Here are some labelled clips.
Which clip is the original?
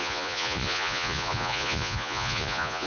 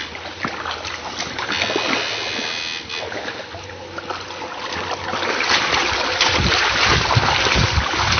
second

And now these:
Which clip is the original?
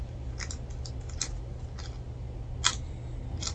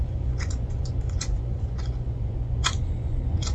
first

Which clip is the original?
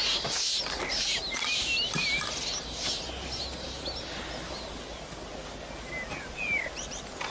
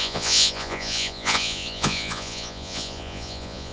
first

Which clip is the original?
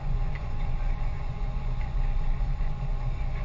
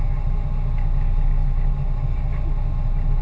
second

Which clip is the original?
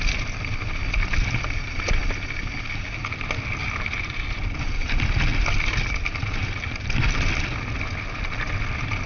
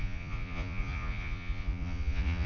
first